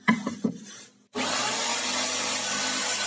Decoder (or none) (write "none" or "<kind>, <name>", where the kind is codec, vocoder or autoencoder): none